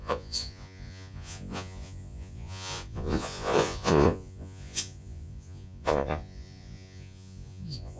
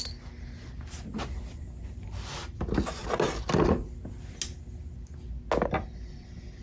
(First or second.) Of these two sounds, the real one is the second